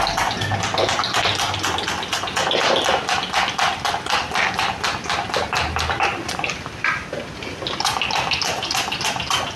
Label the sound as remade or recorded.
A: recorded